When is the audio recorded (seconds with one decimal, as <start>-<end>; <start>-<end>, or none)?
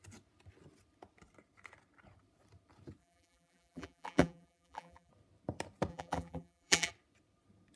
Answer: 0.0-3.0; 5.1-5.9; 6.9-7.8